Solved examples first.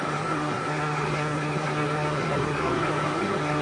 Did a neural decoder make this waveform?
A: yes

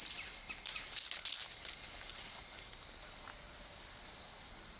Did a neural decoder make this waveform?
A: no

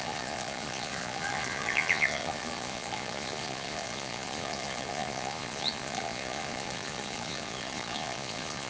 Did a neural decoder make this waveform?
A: yes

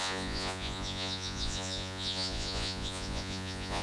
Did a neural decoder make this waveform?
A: yes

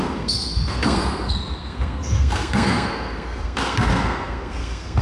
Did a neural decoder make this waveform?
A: yes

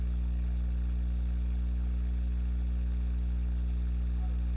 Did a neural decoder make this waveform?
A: no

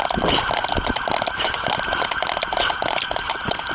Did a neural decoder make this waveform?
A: no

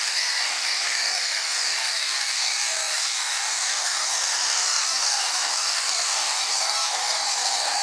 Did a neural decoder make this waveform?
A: yes